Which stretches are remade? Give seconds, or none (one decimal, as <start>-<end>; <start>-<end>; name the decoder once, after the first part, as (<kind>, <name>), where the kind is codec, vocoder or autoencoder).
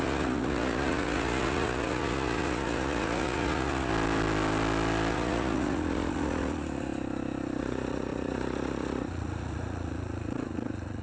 0.0-3.9 (vocoder, Vocos); 5.1-6.9; 7.6-11.0